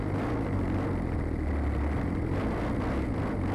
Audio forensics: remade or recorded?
recorded